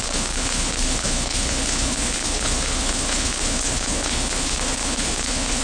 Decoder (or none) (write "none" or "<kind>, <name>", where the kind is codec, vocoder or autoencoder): codec, HILCodec